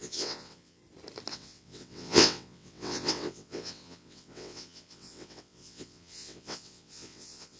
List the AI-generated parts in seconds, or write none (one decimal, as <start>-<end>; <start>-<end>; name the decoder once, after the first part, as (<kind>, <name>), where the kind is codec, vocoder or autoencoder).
0.0-0.8 (vocoder, WaveNeXt); 1.3-7.6